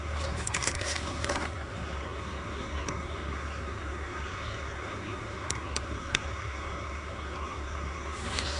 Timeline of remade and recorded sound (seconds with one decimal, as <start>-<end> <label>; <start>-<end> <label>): 0.0-8.6 remade